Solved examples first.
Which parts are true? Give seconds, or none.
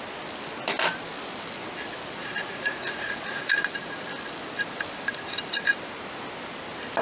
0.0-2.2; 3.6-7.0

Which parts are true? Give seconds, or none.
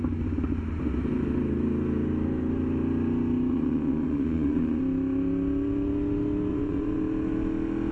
0.0-3.5; 4.8-6.5; 7.0-7.9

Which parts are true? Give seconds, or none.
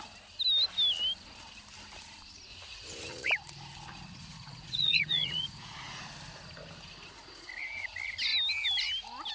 0.0-2.5; 3.3-4.3; 6.0-9.3